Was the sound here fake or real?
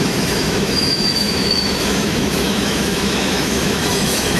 fake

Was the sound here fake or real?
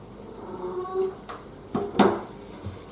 real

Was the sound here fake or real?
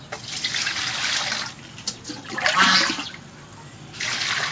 real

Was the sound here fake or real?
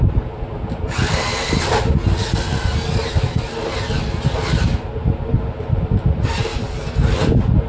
real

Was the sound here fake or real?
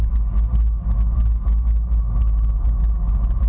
real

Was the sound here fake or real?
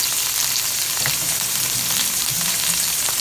real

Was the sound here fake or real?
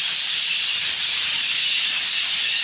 real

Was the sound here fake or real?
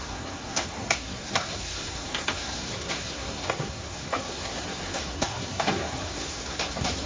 fake